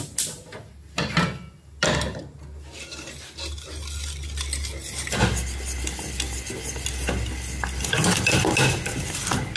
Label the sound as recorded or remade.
recorded